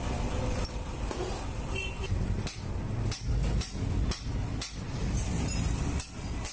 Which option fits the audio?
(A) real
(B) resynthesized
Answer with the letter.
A